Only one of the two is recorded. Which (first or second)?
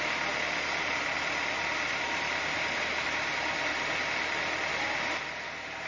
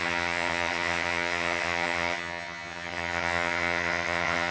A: first